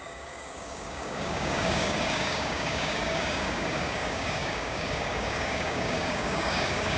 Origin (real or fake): fake